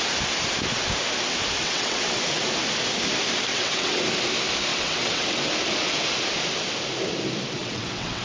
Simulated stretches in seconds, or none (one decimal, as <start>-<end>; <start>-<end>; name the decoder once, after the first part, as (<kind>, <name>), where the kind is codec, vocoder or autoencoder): 1.6-2.2 (vocoder, WaveNeXt); 3.5-4.0; 4.7-5.5; 7.6-8.2